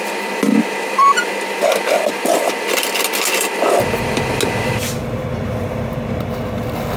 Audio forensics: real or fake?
real